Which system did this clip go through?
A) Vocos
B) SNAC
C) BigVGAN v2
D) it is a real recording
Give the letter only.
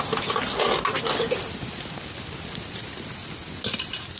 D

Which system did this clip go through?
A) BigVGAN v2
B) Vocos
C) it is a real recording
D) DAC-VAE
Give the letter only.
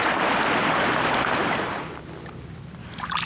C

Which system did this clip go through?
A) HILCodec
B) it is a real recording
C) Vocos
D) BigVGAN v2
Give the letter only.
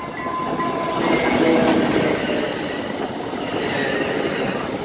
B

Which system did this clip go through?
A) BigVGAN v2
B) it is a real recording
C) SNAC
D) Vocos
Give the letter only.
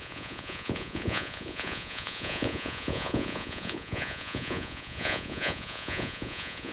D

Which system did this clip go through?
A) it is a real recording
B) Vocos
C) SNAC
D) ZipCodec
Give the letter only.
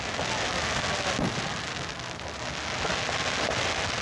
A